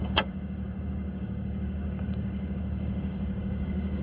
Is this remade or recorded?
remade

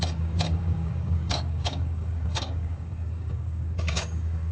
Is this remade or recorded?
remade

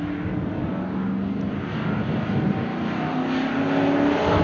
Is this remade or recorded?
recorded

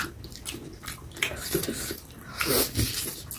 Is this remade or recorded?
recorded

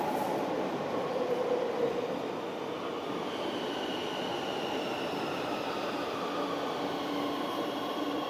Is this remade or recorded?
recorded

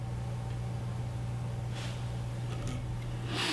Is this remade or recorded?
recorded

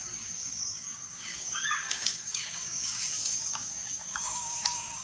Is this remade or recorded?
remade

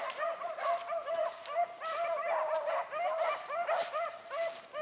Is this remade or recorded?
recorded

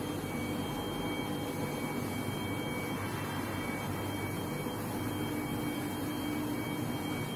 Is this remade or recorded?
recorded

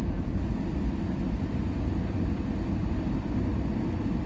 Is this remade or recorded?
recorded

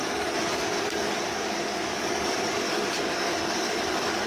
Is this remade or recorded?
remade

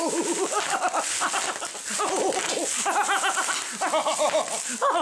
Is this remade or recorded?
recorded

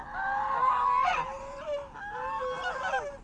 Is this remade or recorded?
recorded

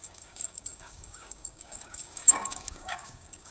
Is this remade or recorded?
remade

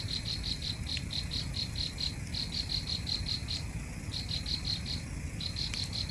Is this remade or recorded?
recorded